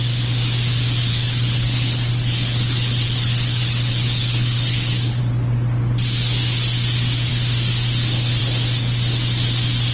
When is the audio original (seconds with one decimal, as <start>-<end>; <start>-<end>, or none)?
0.0-1.1; 5.2-9.9